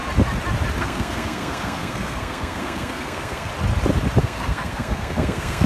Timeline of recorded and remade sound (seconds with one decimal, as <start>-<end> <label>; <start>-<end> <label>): 0.0-0.8 recorded; 0.8-3.5 remade; 3.5-4.2 recorded; 4.2-5.7 remade